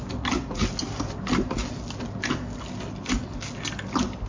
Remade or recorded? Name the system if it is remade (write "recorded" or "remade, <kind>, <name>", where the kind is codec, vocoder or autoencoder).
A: recorded